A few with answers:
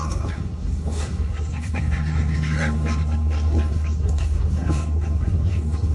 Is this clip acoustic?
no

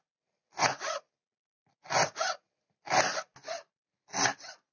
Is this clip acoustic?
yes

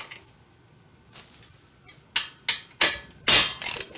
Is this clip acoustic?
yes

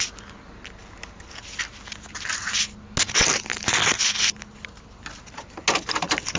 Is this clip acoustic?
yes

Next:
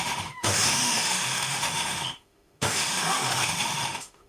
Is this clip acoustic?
no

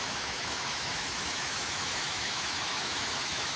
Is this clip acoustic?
no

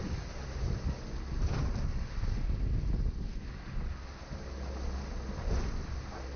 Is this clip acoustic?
yes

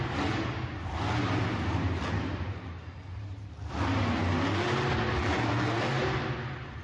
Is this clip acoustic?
yes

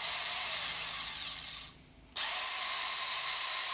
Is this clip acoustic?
yes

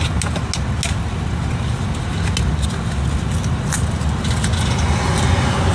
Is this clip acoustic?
yes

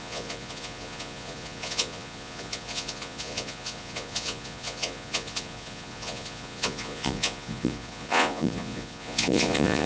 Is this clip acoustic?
no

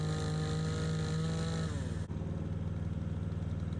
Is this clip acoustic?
yes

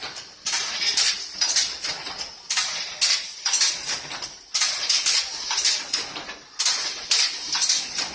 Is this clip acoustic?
yes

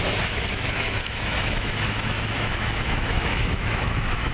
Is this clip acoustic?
no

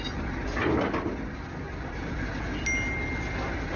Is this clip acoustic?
yes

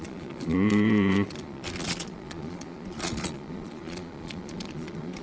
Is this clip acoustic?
no